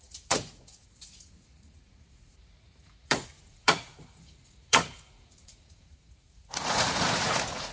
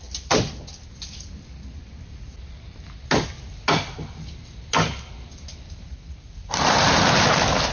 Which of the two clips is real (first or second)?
second